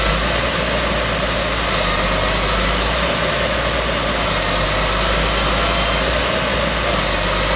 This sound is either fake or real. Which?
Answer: real